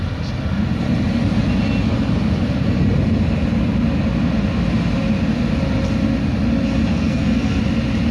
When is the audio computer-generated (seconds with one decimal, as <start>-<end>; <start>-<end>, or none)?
6.9-7.6